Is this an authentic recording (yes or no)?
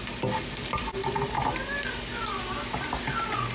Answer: yes